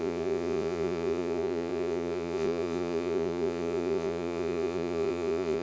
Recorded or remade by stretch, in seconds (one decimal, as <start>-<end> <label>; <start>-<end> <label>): 0.0-5.6 remade